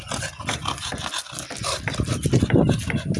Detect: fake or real real